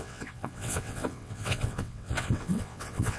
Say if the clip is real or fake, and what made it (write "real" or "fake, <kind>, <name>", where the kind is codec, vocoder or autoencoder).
fake, vocoder, WaveNeXt